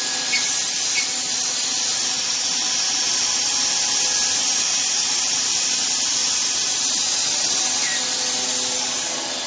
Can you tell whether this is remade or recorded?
recorded